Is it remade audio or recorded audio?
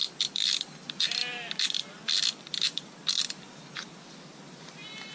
recorded